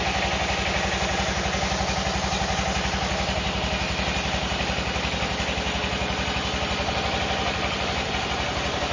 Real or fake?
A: real